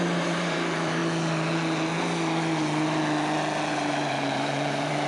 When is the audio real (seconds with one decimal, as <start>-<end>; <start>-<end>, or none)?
1.0-3.7